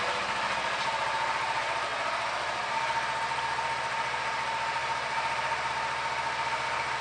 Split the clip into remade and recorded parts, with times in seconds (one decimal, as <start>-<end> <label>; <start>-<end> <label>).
0.0-7.0 recorded

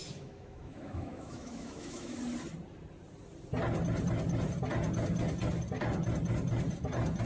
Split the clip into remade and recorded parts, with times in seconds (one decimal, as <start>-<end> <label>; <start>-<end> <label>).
0.0-2.2 remade; 2.2-7.3 recorded

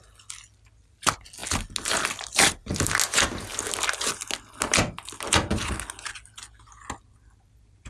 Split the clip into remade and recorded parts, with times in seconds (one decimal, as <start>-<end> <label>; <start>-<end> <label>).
0.0-7.9 recorded

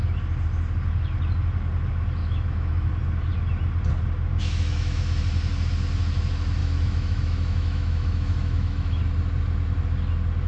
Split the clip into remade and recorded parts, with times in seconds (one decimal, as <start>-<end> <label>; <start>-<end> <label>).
0.0-2.2 recorded; 2.2-2.9 remade; 2.9-4.3 recorded; 4.3-5.2 remade; 5.2-6.6 recorded; 6.6-9.0 remade; 9.0-10.5 recorded

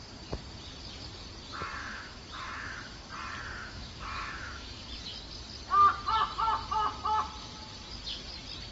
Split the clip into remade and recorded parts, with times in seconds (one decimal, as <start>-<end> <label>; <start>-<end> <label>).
0.0-1.8 recorded; 1.8-3.1 remade; 3.1-3.6 recorded; 3.6-4.9 remade; 4.9-8.7 recorded

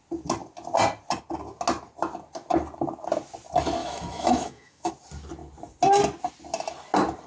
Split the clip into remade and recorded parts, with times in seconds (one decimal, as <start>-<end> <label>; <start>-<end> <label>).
0.0-3.8 recorded; 3.8-4.9 remade; 4.9-7.3 recorded

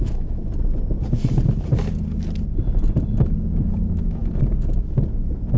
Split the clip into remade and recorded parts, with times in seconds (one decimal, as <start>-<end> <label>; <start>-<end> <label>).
0.0-0.4 remade; 0.4-3.8 recorded; 3.8-4.2 remade; 4.2-5.6 recorded